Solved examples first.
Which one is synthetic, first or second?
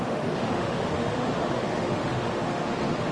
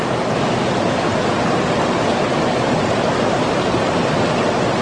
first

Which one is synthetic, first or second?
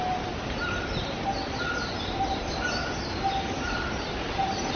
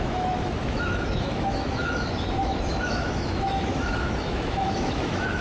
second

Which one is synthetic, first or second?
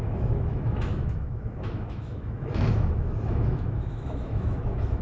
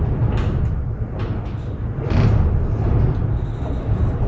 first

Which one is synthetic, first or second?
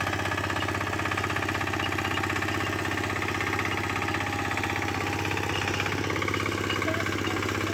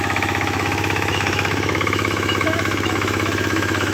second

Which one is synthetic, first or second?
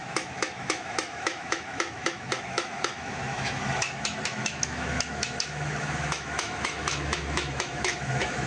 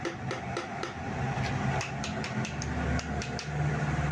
first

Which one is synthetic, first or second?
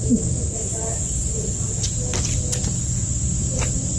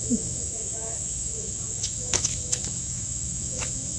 second